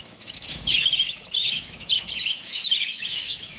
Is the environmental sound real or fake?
fake